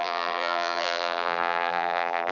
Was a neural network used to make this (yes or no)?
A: yes